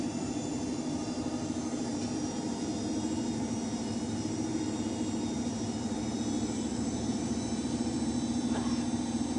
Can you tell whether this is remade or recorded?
remade